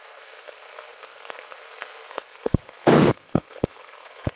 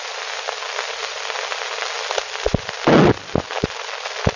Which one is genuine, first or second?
second